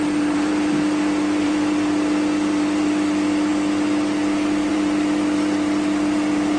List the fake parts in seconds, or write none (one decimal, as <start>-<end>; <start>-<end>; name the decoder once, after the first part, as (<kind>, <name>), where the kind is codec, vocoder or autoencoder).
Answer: 0.0-3.5 (vocoder, BigVGAN v2); 4.7-6.6